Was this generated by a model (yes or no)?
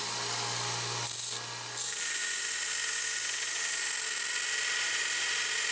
no